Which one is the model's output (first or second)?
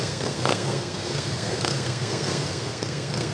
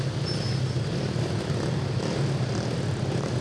first